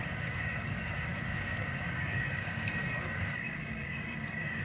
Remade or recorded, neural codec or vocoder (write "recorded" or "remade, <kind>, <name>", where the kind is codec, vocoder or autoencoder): remade, codec, DAC